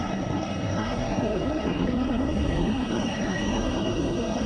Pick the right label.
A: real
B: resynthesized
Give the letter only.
B